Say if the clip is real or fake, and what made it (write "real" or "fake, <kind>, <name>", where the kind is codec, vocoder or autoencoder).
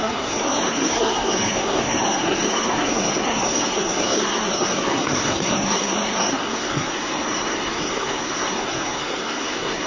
fake, codec, SNAC